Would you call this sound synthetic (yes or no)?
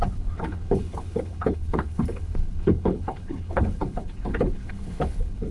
yes